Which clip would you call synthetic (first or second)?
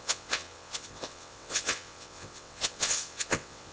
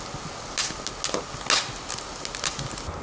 first